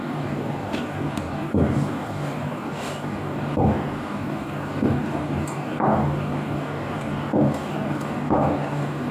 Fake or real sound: fake